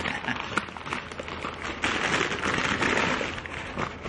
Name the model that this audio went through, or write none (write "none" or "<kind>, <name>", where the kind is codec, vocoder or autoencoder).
none